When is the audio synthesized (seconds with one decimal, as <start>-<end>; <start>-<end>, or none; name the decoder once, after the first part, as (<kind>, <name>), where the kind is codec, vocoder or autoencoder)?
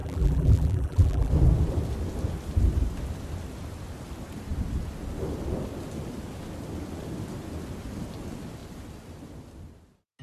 0.0-1.3 (vocoder, BigVGAN v2)